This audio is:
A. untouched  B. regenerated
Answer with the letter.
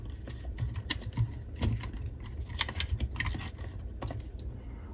A